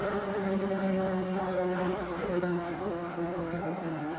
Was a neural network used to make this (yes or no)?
yes